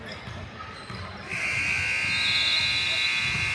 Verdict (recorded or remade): recorded